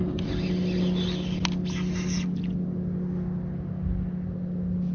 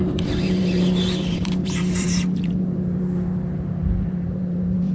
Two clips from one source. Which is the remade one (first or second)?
second